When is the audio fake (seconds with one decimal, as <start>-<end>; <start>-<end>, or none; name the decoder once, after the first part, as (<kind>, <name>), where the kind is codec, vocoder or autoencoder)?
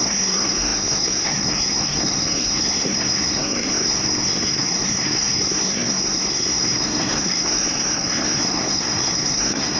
0.0-9.8 (codec, SNAC)